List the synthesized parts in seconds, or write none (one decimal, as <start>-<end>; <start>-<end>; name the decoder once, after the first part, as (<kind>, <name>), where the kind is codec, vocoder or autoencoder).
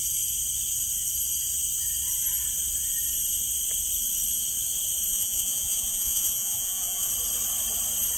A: 5.1-7.1 (vocoder, Vocos)